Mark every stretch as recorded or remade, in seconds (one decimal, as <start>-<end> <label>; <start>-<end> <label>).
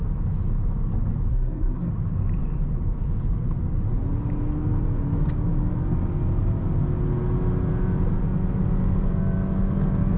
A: 0.0-1.3 recorded; 1.3-1.9 remade; 1.9-10.2 recorded